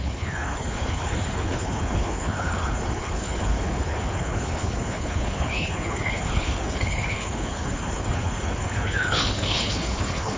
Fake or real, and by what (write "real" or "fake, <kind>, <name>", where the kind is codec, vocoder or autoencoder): fake, codec, HILCodec